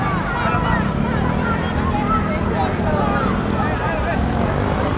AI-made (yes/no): no